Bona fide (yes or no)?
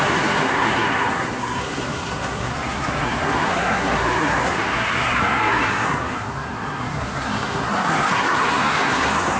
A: no